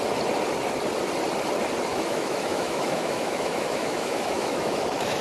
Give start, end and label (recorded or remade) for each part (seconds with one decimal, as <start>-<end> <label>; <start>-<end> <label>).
0.0-1.9 recorded; 1.9-5.2 remade